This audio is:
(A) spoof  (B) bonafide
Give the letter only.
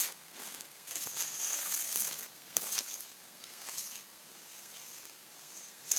A